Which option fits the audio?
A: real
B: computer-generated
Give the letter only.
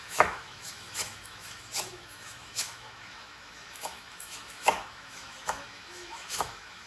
B